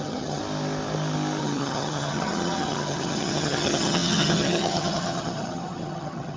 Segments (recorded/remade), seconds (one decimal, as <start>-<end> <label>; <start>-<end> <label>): 0.0-0.4 remade; 0.4-1.4 recorded; 1.4-6.4 remade